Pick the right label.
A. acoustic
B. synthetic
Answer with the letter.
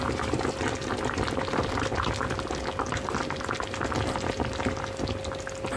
A